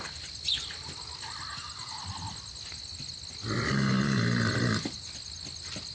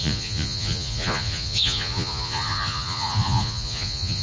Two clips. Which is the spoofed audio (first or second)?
second